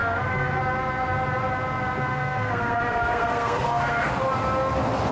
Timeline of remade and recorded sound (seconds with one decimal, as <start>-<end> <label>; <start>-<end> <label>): 0.0-0.6 remade; 0.6-2.1 recorded; 2.1-4.1 remade; 4.1-5.1 recorded